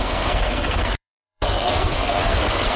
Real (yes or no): no